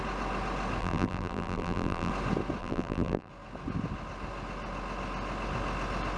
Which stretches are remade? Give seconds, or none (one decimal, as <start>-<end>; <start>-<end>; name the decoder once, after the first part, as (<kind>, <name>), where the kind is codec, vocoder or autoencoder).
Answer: 0.8-2.1 (vocoder, BigVGAN v2); 2.6-3.3